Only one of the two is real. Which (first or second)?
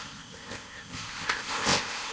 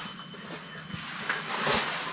second